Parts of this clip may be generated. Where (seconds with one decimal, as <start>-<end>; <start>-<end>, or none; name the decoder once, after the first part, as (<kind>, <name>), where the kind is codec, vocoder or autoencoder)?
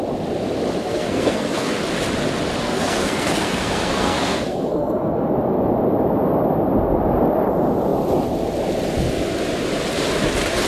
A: 0.8-1.8 (codec, SNAC); 2.6-5.3